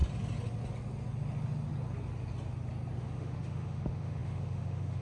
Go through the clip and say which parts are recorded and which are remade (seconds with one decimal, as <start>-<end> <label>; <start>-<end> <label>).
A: 0.0-3.0 recorded; 3.0-5.0 remade